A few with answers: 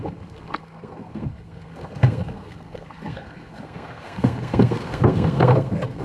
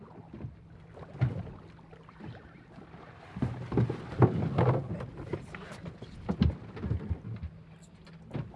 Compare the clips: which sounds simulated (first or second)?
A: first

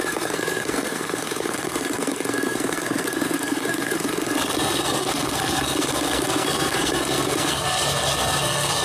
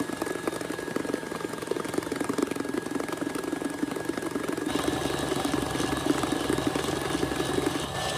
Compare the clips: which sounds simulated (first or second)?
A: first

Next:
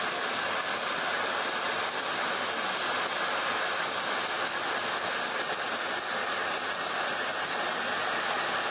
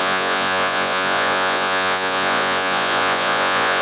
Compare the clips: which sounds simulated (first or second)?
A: second